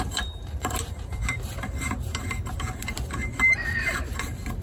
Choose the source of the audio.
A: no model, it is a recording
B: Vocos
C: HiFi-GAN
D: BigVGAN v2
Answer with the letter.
D